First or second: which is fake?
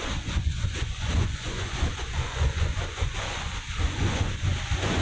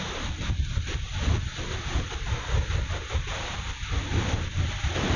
first